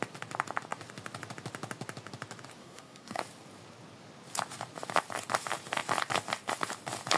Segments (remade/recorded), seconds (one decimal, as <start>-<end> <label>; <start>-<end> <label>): 0.0-2.6 recorded; 2.6-3.2 remade; 3.2-7.2 recorded